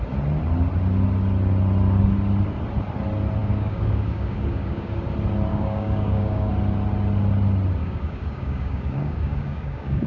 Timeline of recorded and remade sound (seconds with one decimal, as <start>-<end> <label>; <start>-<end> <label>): 0.0-3.4 recorded; 3.4-5.0 remade; 5.0-5.5 recorded; 5.5-6.5 remade; 6.5-7.8 recorded; 7.8-10.1 remade